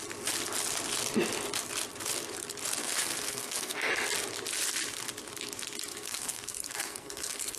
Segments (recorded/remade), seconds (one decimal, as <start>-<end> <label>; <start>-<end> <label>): 0.0-2.8 recorded; 2.8-3.9 remade; 3.9-5.9 recorded; 5.9-7.6 remade